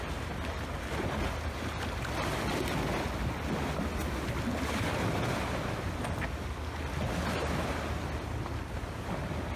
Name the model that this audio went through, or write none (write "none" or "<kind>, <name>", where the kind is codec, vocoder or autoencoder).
none